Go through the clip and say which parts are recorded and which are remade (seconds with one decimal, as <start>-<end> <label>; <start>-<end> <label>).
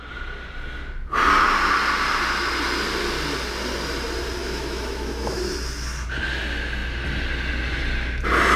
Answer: 0.0-4.4 recorded; 4.4-5.4 remade; 5.4-8.6 recorded